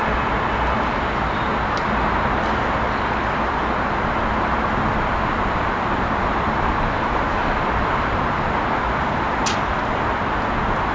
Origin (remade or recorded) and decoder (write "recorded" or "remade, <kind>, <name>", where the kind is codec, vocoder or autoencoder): recorded